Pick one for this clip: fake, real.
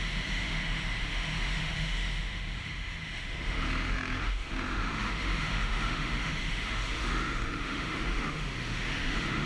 fake